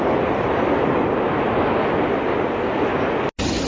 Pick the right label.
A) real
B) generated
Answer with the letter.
A